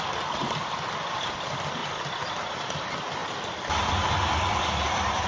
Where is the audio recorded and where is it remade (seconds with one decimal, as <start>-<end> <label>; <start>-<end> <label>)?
0.0-3.2 remade; 3.2-3.8 recorded; 3.8-5.3 remade